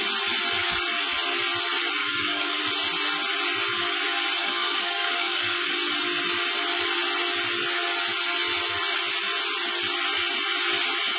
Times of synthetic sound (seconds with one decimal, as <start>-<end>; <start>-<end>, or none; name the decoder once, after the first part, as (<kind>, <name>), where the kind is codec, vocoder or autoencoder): 2.0-2.6 (codec, DAC); 4.4-5.7